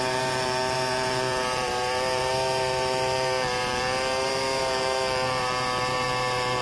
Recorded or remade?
remade